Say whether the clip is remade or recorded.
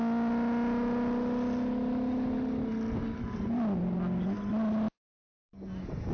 recorded